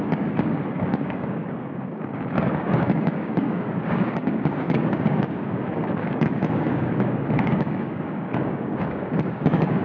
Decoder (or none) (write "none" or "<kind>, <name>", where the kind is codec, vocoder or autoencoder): codec, DAC